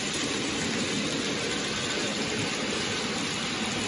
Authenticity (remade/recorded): recorded